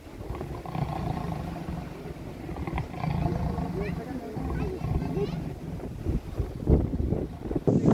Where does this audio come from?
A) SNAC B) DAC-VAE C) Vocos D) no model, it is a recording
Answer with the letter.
D